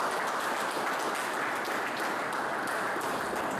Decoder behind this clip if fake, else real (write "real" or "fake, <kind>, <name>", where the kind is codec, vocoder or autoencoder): real